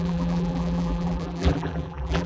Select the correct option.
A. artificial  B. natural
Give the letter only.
A